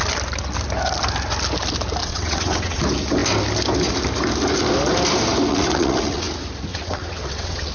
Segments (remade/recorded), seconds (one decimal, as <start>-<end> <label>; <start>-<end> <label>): 0.0-2.0 recorded; 2.0-2.8 remade; 2.8-5.5 recorded; 5.5-6.3 remade; 6.3-6.7 recorded; 6.7-7.7 remade